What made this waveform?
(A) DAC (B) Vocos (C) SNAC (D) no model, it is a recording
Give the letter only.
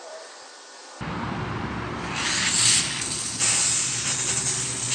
D